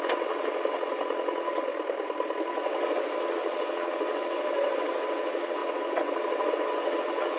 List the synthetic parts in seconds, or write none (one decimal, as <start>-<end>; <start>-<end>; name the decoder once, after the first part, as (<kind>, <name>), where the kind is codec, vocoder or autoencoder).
0.0-1.7 (vocoder, WaveNeXt); 2.5-7.4